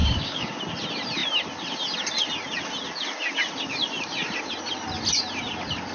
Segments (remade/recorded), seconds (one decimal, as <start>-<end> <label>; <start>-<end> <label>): 0.0-0.6 remade; 0.6-5.9 recorded